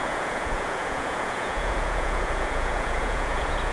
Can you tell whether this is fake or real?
fake